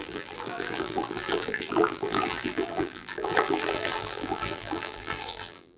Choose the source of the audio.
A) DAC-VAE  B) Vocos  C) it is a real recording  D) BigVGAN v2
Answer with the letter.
D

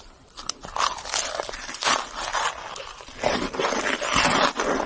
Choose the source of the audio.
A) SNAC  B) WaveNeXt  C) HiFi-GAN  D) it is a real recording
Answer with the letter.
D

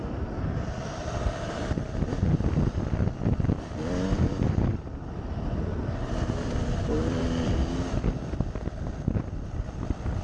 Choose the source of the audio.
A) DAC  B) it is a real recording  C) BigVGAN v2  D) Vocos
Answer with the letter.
C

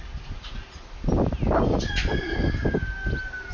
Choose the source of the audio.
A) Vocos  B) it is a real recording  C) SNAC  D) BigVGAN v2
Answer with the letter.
B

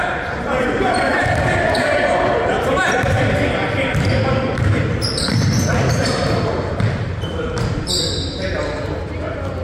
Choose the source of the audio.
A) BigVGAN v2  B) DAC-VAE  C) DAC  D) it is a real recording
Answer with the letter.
A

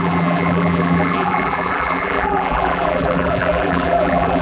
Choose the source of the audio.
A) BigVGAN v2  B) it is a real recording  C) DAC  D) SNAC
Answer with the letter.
A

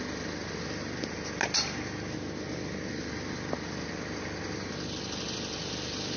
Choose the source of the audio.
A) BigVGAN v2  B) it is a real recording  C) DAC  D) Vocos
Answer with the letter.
B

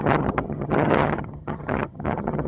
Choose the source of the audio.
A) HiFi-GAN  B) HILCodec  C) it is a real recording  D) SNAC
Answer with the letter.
A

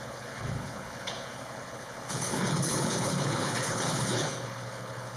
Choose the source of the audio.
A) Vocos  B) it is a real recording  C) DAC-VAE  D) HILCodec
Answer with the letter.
D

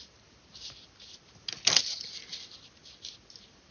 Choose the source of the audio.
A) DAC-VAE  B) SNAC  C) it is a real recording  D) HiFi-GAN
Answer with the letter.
C